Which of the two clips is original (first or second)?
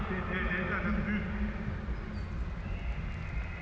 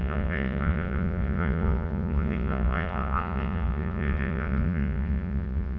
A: first